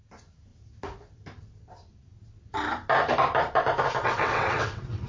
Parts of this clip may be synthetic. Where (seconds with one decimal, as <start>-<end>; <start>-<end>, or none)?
4.0-5.1